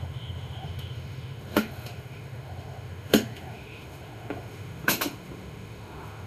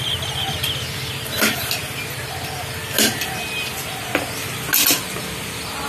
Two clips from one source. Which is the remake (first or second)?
first